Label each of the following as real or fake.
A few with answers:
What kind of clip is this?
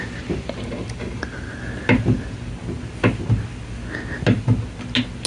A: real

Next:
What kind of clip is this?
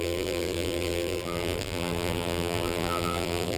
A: fake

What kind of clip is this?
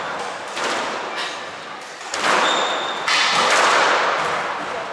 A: real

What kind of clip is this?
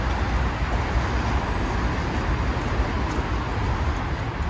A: real